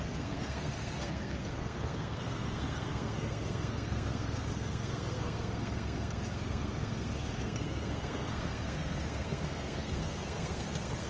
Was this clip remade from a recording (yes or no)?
yes